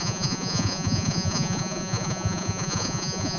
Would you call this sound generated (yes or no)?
yes